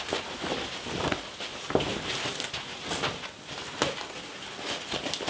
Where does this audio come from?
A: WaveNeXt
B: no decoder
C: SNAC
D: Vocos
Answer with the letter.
B